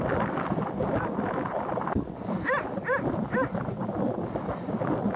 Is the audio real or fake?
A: real